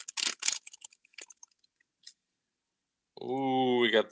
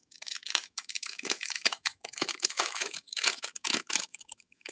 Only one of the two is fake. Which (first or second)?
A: second